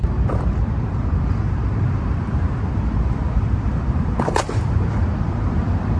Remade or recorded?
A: remade